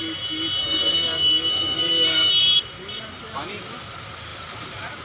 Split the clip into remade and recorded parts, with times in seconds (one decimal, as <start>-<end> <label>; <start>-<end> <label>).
0.0-0.6 recorded; 0.6-2.6 remade; 2.6-5.0 recorded